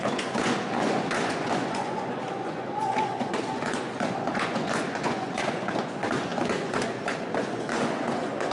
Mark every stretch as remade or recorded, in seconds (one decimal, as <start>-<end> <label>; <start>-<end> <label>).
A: 0.0-8.5 remade